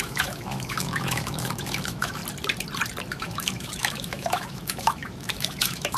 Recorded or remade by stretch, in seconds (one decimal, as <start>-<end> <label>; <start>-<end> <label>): 0.0-2.2 remade; 2.2-3.1 recorded; 3.1-6.0 remade

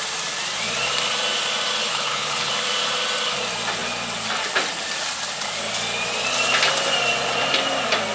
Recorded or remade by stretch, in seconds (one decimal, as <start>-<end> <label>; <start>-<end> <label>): 0.0-1.8 recorded; 1.8-2.5 remade; 2.5-8.1 recorded

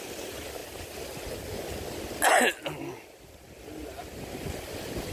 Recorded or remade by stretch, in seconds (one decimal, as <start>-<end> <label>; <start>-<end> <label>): 0.0-5.1 recorded

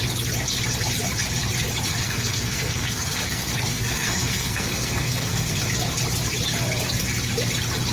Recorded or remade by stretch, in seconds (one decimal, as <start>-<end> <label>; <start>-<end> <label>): 0.0-1.9 recorded; 1.9-5.6 remade; 5.6-7.9 recorded

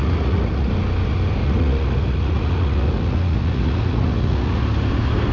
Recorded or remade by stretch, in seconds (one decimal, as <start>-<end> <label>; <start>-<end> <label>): 0.0-0.7 remade; 0.7-1.4 recorded; 1.4-4.6 remade; 4.6-5.3 recorded